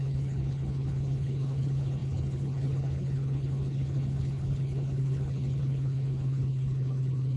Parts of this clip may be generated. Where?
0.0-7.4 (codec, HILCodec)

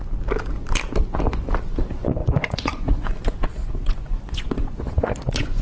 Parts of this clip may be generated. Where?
2.2-3.1 (vocoder, Vocos); 3.6-5.6

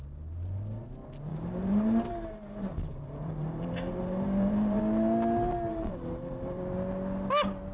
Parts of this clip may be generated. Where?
1.3-4.8 (vocoder, BigVGAN v2); 5.7-6.6